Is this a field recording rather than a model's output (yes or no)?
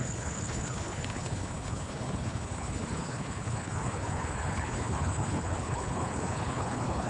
no